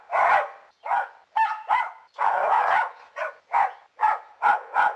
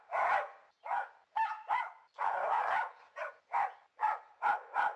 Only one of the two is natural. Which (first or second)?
first